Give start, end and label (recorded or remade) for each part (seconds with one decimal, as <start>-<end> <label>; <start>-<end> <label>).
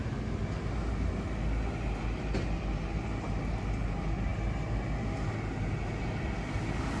0.0-7.0 recorded